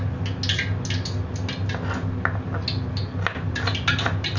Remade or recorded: recorded